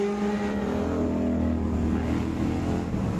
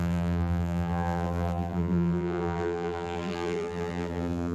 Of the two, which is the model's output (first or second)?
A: second